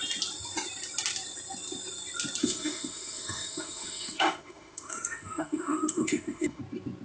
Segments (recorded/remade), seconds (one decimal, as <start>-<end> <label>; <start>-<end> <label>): 0.0-2.4 recorded; 2.4-6.6 remade; 6.6-7.0 recorded